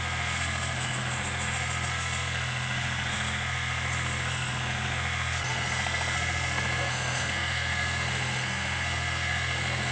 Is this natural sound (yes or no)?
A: no